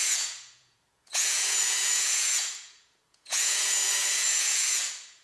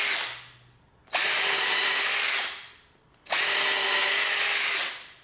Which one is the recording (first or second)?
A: second